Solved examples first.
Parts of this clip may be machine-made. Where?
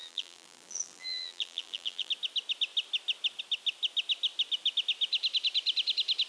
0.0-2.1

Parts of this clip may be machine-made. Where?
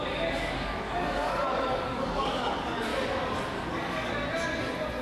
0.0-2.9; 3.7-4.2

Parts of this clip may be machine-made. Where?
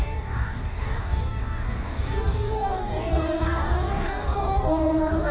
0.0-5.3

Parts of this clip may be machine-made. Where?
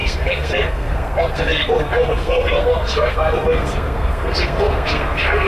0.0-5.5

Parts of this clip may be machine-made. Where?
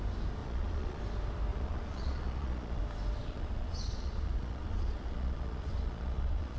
0.4-1.0; 1.5-2.8; 3.2-6.6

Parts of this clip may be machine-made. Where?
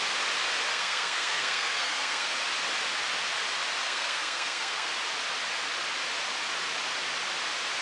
0.7-2.4; 3.8-4.9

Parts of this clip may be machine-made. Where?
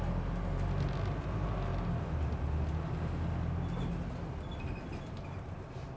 none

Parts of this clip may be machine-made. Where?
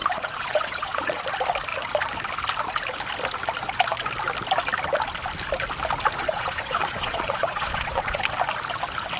0.0-1.2; 6.2-8.2